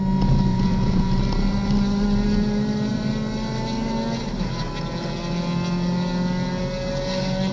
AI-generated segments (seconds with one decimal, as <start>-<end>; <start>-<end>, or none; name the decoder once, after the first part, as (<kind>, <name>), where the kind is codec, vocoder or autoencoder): 0.5-1.2 (vocoder, Vocos)